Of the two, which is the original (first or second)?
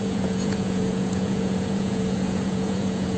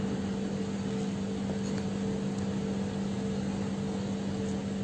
second